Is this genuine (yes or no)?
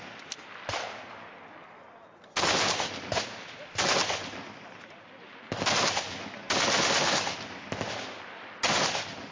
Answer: yes